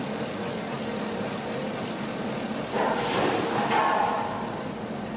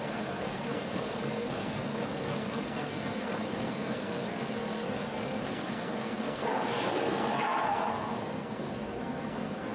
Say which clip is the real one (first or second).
first